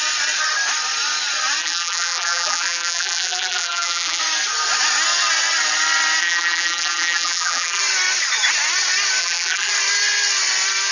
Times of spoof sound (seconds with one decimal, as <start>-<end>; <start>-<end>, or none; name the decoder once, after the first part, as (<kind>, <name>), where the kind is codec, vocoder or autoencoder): 1.6-4.2 (vocoder, BigVGAN v2); 6.2-7.8; 9.2-9.7